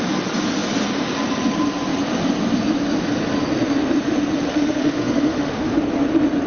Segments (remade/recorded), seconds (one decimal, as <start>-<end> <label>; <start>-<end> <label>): 0.0-4.5 recorded; 4.5-5.8 remade; 5.8-6.5 recorded